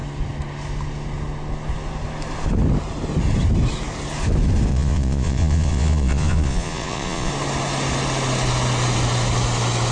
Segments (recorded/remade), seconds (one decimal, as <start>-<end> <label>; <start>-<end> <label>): 0.0-4.7 recorded; 4.7-7.3 remade; 7.3-9.9 recorded